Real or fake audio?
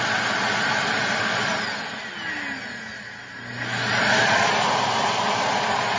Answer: real